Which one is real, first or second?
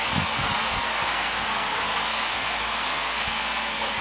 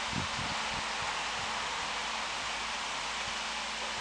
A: second